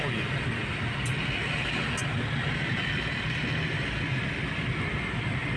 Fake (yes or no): no